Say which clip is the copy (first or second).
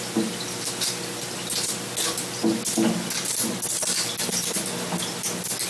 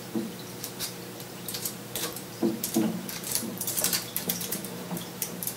second